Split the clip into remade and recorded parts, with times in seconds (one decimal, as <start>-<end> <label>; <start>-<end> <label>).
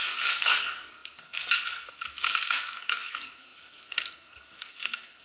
0.0-5.2 remade